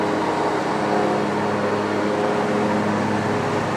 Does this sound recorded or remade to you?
recorded